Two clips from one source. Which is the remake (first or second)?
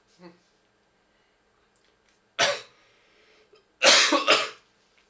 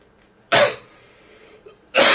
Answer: second